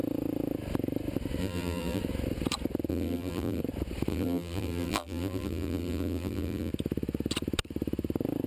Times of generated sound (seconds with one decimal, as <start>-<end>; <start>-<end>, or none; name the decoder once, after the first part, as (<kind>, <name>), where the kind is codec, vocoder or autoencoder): 1.4-2.0 (vocoder, BigVGAN v2); 2.9-3.6; 4.1-6.7